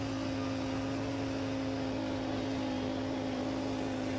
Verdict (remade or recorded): recorded